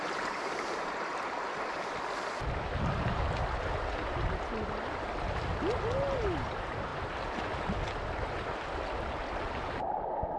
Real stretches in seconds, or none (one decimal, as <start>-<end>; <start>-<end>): 1.1-6.4; 6.9-9.8